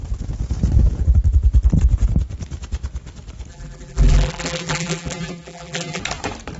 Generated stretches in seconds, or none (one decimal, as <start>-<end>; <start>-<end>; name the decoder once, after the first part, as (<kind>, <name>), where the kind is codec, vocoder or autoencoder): 3.5-6.0 (vocoder, BigVGAN v2)